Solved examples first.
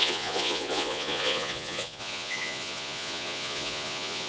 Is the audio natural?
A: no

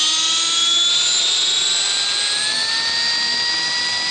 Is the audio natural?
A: yes